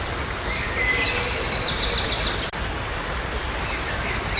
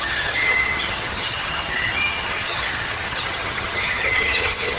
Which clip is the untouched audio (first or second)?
first